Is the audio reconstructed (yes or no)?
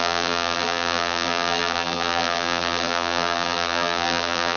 yes